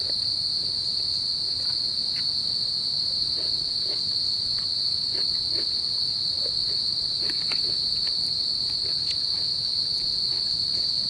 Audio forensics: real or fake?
real